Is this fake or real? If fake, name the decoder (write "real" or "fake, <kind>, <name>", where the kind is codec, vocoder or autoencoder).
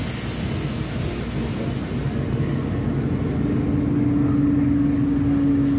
real